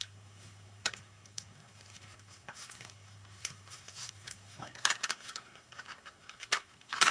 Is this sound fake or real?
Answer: fake